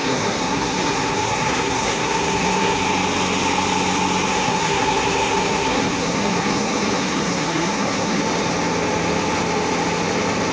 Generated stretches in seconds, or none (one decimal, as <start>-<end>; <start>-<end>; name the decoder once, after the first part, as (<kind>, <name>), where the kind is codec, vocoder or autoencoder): 0.0-2.8 (codec, SNAC); 4.3-8.2